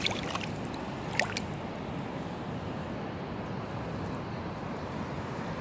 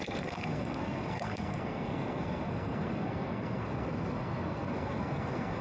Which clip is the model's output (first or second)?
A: second